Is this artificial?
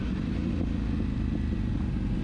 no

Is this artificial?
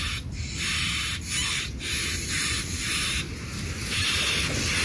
no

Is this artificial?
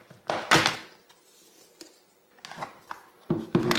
no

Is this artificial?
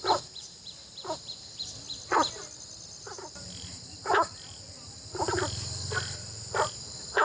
no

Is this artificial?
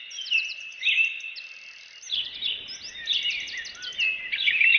no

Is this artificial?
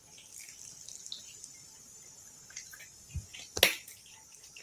no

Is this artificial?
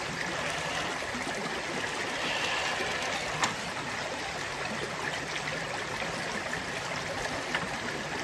no